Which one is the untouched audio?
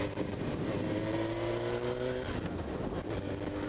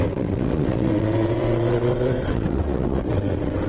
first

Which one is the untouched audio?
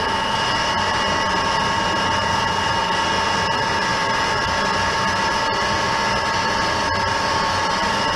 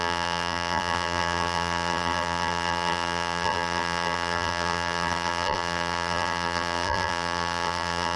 first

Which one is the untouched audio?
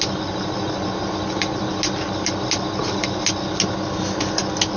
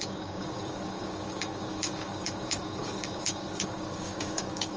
first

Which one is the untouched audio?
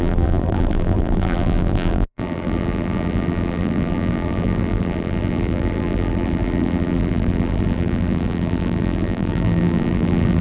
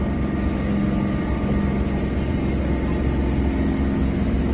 second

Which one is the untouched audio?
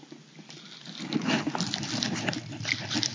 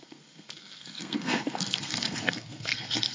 first